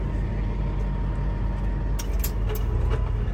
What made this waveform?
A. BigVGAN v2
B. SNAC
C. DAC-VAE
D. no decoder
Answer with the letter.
D